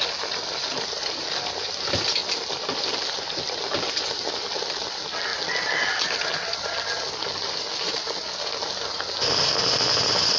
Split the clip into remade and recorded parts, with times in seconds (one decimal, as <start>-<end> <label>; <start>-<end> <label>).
0.0-10.4 recorded